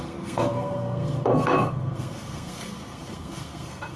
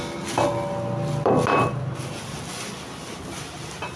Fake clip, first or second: first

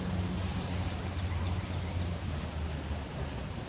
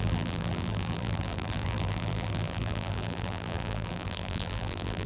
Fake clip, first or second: second